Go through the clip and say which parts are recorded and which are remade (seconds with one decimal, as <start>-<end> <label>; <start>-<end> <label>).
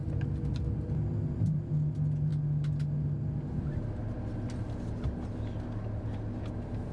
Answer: 0.0-6.9 recorded